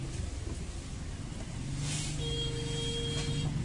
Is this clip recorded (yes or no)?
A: yes